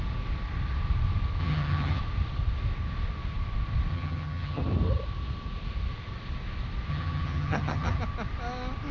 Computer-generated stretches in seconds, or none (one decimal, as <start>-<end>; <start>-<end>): 1.4-2.0; 3.9-4.6; 6.9-8.0